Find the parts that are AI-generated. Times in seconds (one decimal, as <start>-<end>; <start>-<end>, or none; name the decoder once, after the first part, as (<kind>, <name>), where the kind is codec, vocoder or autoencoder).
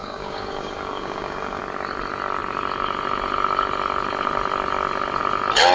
0.0-1.6 (codec, DAC)